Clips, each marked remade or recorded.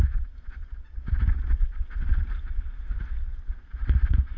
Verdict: recorded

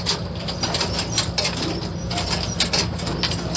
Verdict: recorded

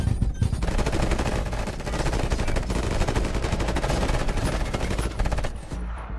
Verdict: recorded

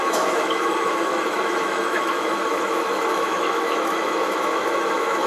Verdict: remade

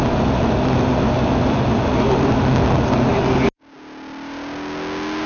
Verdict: recorded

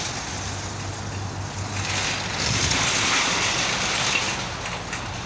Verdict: recorded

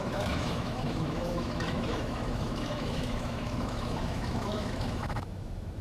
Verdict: remade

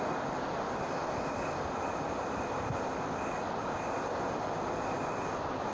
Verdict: recorded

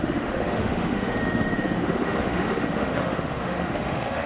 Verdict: remade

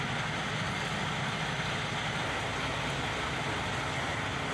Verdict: recorded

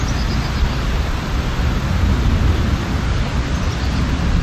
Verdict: recorded